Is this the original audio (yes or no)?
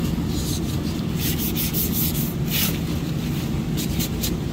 yes